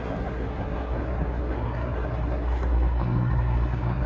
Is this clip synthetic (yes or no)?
yes